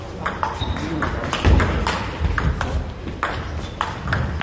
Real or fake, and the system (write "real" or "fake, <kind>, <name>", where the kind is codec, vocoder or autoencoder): real